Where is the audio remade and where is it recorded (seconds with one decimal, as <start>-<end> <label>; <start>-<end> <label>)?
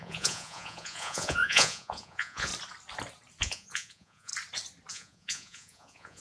0.0-2.5 remade; 2.5-3.4 recorded; 3.4-4.3 remade; 4.3-4.9 recorded; 4.9-6.2 remade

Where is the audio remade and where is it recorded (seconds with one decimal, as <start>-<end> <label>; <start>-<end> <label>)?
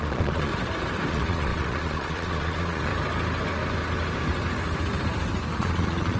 0.0-0.5 remade; 0.5-1.1 recorded; 1.1-2.9 remade; 2.9-5.5 recorded; 5.5-6.2 remade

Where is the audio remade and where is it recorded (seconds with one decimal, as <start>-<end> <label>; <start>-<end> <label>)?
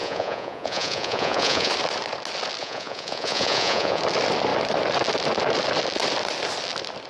0.0-1.7 remade; 1.7-2.6 recorded; 2.6-4.0 remade; 4.0-7.1 recorded